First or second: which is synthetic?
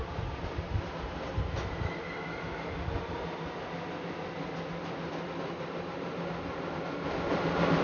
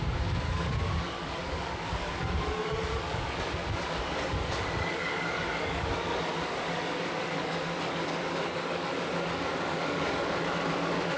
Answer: second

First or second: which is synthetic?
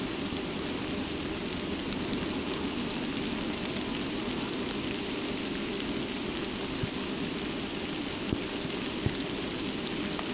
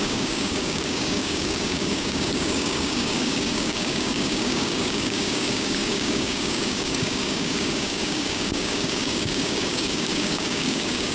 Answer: second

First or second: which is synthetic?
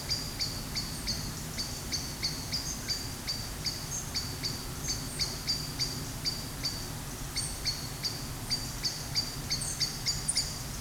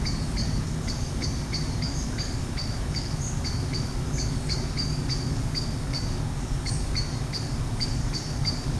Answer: second